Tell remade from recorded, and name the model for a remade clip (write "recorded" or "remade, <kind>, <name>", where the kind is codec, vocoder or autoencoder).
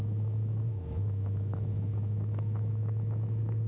remade, autoencoder, DAC-VAE